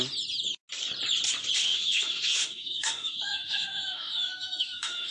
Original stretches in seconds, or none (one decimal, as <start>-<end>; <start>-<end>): 0.0-1.6